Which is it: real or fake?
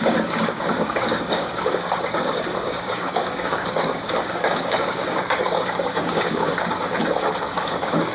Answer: fake